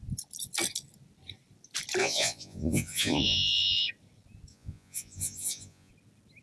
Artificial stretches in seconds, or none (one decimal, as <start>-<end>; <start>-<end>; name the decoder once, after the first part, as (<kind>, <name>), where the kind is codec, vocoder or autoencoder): 2.0-3.9 (vocoder, Vocos); 4.5-5.9